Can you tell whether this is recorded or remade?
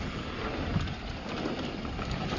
recorded